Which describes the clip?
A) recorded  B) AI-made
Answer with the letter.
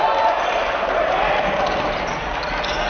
B